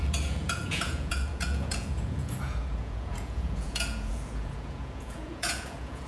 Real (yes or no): no